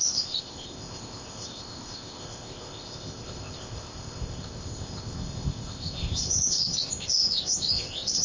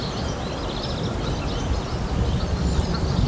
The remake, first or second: first